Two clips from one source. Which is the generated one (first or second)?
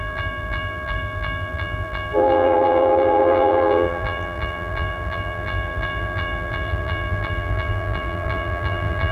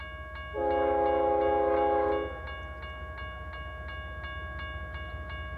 first